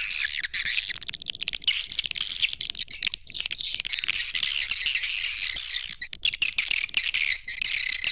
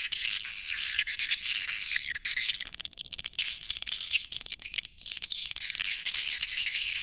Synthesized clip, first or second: second